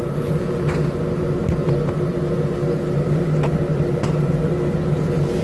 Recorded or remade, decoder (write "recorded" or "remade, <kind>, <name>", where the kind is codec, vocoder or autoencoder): recorded